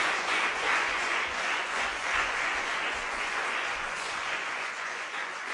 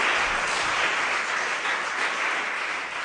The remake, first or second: first